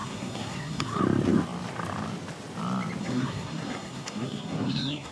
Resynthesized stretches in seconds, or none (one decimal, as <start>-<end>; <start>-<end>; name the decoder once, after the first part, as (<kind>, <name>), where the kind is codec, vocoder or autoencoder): 0.0-1.0 (codec, SNAC); 3.0-5.1